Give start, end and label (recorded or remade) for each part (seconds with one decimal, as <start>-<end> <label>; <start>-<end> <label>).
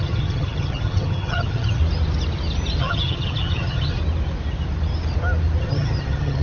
0.0-1.8 remade; 1.8-2.8 recorded; 2.8-4.0 remade; 4.0-5.6 recorded; 5.6-6.4 remade